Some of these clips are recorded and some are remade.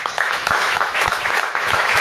remade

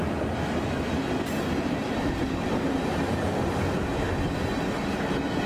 recorded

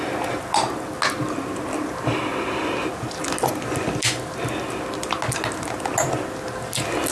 recorded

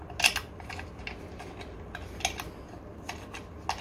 recorded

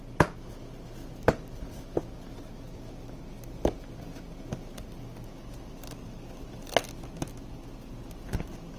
recorded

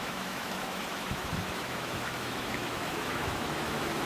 remade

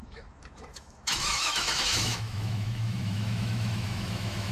remade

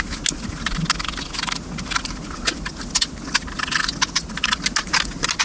recorded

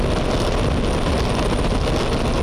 recorded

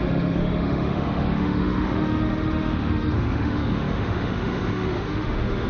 remade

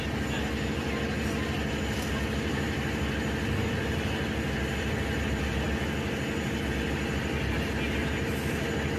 recorded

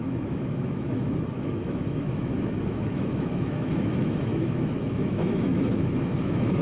remade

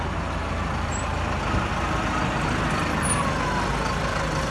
recorded